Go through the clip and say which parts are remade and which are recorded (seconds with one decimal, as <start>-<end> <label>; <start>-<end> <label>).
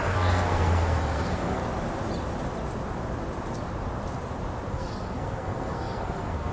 0.0-1.6 remade; 1.6-4.7 recorded; 4.7-6.5 remade